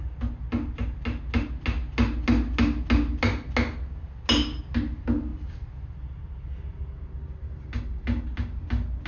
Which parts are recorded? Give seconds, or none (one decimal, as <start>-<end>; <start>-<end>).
0.0-9.1